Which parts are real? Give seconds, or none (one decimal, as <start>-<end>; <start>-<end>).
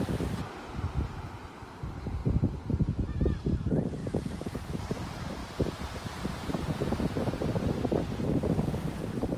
0.0-9.4